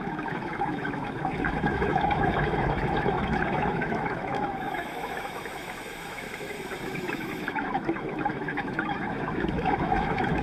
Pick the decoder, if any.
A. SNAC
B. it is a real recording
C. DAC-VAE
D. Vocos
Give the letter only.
C